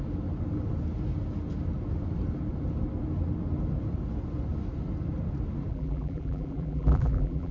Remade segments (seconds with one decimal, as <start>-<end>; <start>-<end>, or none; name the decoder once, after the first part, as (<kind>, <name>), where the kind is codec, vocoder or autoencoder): 5.7-7.5 (vocoder, BigVGAN v2)